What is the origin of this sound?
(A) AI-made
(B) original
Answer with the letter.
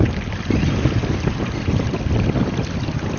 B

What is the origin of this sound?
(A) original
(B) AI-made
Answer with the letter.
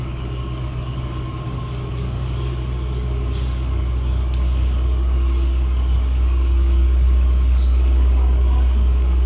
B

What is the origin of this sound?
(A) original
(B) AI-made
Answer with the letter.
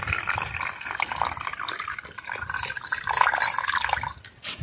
A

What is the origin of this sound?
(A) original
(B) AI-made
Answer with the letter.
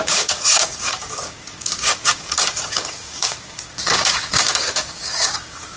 B